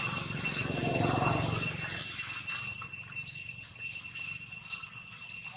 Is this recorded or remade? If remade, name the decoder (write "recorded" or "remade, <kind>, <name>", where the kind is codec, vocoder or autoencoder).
recorded